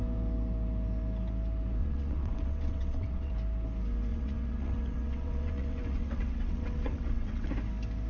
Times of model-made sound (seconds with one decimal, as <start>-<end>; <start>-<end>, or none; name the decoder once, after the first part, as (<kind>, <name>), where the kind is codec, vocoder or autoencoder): 1.8-3.3 (vocoder, WaveNeXt); 4.1-7.5